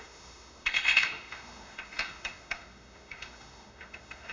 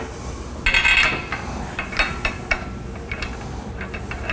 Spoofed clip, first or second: first